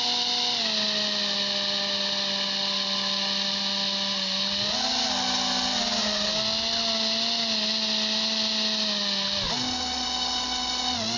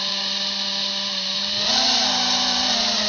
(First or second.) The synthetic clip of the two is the second